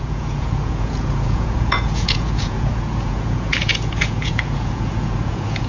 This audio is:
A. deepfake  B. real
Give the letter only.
A